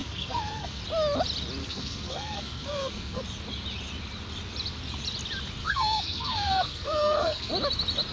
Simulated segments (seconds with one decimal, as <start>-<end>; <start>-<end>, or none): 0.0-0.8; 1.6-3.2; 5.6-7.5